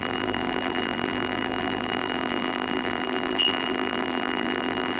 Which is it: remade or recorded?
remade